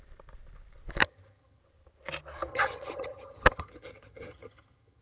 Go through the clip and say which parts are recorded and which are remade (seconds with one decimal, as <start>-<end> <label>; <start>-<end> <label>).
0.0-1.0 recorded; 1.0-1.6 remade; 1.6-2.5 recorded; 2.5-5.0 remade